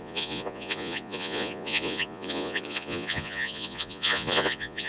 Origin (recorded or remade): remade